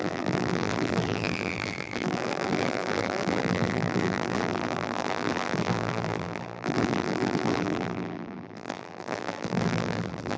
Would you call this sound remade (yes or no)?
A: yes